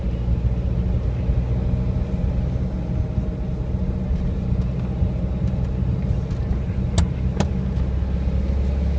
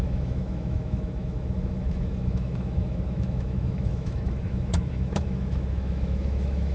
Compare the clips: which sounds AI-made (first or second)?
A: second